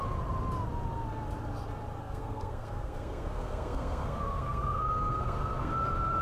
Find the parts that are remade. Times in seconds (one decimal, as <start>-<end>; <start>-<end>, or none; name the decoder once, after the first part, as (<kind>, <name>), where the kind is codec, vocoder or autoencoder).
2.0-5.7 (codec, SNAC)